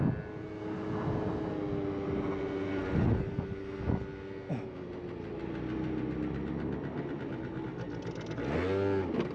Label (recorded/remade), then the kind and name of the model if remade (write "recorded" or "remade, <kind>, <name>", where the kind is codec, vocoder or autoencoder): recorded